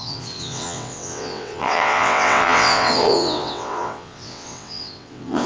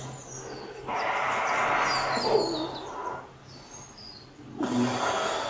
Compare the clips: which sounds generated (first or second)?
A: first